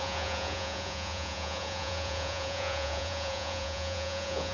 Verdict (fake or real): fake